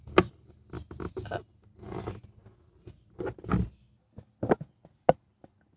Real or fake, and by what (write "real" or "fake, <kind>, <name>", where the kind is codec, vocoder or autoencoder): real